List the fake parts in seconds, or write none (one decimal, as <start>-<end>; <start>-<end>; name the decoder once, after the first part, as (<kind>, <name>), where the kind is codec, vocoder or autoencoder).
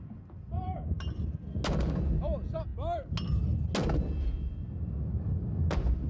none